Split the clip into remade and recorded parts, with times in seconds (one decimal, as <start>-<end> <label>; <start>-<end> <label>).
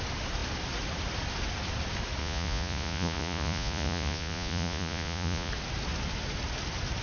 0.0-2.2 recorded; 2.2-5.5 remade; 5.5-7.0 recorded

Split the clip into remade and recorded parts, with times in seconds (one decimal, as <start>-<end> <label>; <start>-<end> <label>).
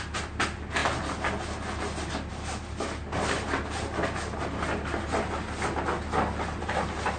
0.0-7.2 recorded